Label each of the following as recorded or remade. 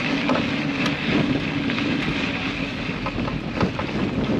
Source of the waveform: recorded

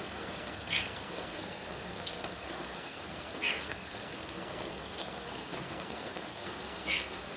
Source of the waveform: remade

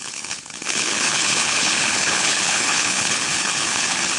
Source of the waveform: remade